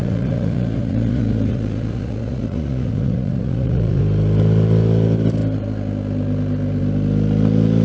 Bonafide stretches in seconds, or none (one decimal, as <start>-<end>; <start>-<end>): 4.0-7.8